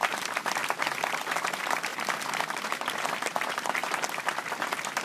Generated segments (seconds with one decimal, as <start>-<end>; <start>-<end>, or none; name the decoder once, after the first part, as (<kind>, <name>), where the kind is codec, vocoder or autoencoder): 0.0-0.6 (vocoder, BigVGAN v2); 1.4-3.8; 4.3-5.0